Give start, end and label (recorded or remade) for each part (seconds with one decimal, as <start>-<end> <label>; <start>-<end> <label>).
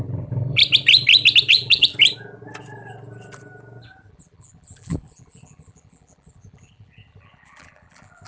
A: 0.0-0.6 remade; 0.6-1.5 recorded; 1.5-1.9 remade; 1.9-4.1 recorded; 4.1-8.3 remade